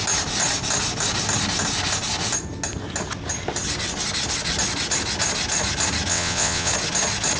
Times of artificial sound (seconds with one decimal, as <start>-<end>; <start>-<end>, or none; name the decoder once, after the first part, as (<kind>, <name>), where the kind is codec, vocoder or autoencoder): 6.1-6.7 (vocoder, WaveNeXt)